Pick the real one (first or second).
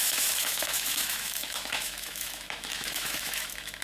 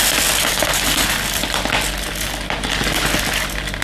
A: second